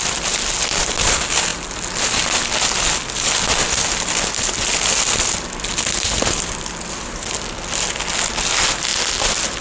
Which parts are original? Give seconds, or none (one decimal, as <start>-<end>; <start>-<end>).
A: 0.0-9.6